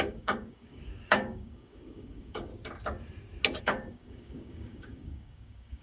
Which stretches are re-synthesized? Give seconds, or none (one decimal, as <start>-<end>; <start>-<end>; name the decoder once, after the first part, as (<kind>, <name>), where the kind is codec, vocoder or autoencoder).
0.0-2.5 (codec, DAC); 3.6-5.8